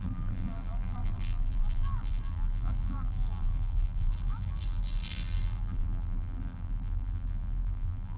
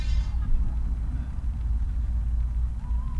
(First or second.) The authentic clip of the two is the second